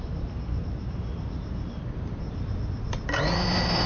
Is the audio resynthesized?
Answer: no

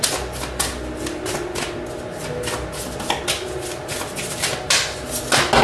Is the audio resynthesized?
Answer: no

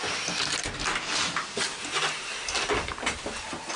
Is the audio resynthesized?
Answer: no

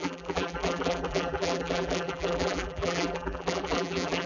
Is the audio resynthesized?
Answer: yes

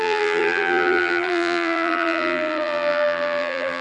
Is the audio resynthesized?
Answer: yes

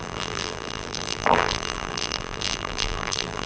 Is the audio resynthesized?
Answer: yes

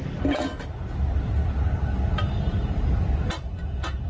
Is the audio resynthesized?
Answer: no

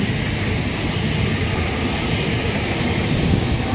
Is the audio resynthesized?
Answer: no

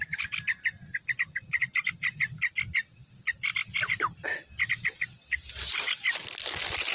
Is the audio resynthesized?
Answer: no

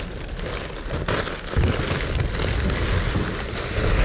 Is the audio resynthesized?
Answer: no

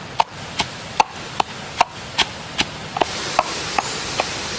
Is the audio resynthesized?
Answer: no